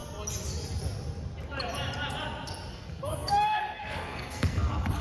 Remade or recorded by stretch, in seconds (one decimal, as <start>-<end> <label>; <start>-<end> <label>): 0.0-2.7 recorded; 2.7-5.0 remade